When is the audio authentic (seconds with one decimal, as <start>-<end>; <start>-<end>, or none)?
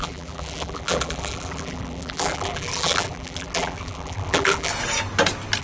4.7-5.6